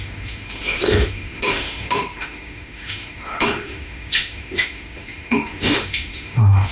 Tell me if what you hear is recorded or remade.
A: remade